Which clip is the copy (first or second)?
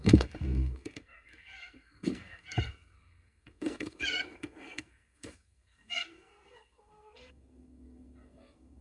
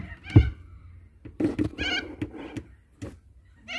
first